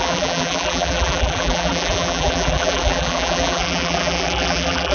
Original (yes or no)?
no